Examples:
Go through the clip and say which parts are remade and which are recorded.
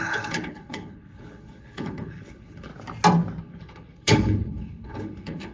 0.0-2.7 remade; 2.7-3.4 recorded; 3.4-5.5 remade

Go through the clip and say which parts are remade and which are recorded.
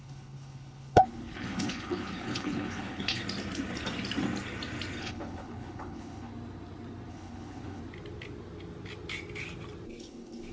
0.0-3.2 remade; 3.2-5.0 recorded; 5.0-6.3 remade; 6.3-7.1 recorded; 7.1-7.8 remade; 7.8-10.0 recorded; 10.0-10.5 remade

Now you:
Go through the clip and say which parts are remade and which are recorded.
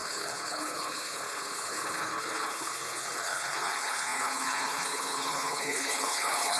0.0-6.6 remade